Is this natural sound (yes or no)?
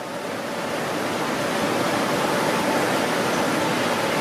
yes